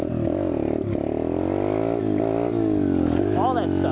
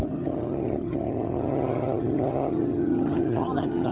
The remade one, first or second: second